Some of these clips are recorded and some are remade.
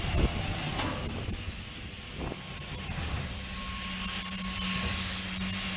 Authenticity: recorded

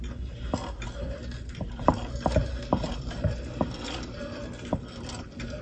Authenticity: recorded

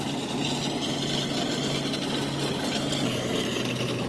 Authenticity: recorded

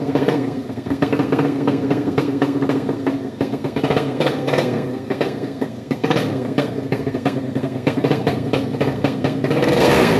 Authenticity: remade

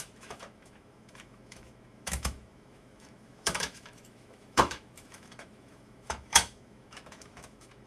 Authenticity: remade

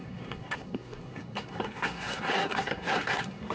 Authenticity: remade